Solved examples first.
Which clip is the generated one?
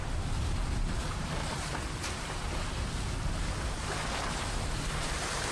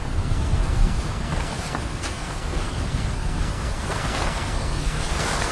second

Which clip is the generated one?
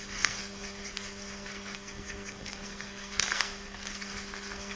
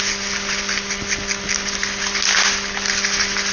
first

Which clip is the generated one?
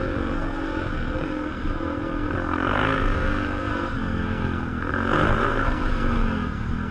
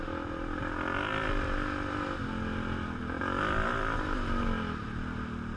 first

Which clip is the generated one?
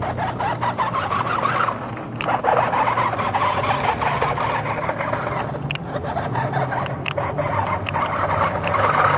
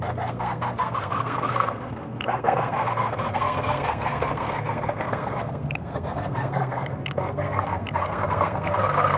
second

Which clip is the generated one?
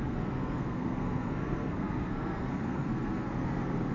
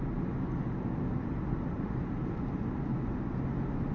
first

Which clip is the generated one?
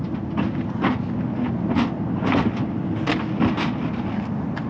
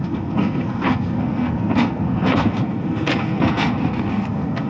second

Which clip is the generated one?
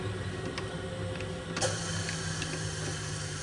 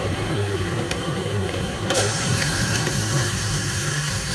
second